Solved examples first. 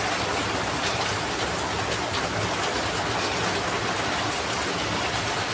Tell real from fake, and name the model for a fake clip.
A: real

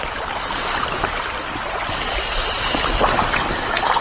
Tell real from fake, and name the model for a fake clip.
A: real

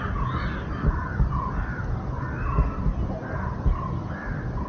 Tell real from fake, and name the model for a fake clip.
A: real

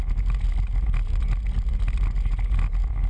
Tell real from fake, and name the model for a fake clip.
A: real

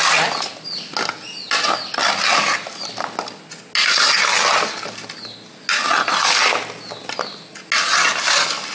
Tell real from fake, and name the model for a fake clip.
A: real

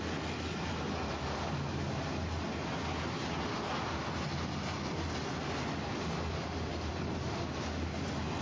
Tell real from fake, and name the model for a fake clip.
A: real